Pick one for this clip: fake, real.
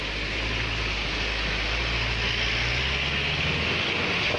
real